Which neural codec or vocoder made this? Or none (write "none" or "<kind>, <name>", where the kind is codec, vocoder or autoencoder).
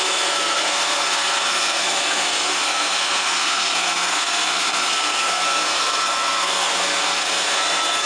codec, SNAC